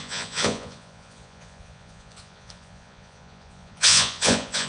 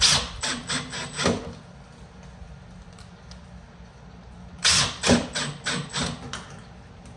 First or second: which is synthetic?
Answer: first